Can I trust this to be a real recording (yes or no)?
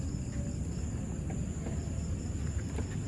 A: yes